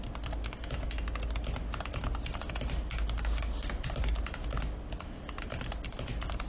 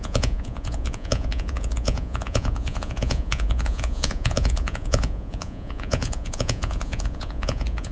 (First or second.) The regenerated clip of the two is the second